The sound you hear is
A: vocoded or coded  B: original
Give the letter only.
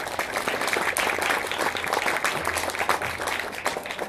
B